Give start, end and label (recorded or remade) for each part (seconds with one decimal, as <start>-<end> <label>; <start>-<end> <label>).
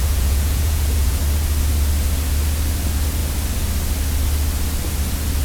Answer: 0.0-1.2 remade; 1.2-5.4 recorded